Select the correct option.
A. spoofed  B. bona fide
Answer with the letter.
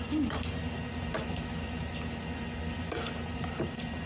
A